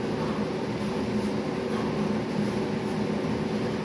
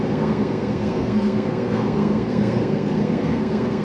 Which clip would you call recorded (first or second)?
first